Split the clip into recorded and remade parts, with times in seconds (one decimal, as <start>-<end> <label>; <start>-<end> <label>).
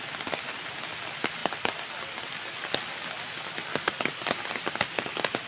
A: 0.0-5.5 recorded